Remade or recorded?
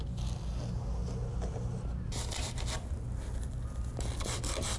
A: recorded